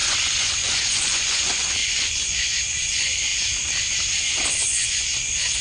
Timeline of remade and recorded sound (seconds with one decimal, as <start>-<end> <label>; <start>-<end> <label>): 0.0-3.3 remade; 3.3-4.6 recorded; 4.6-5.6 remade